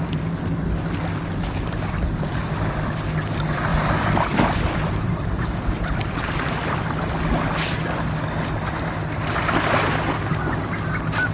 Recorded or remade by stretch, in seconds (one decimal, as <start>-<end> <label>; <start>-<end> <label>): 0.0-11.3 recorded